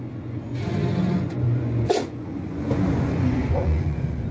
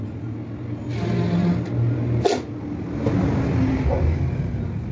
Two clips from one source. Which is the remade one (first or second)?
first